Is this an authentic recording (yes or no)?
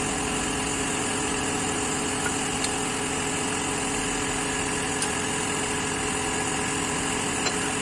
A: yes